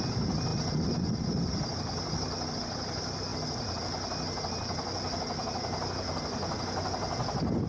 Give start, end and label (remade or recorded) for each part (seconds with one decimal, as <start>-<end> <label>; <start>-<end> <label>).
0.0-7.7 recorded